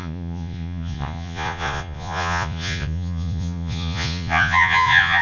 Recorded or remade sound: remade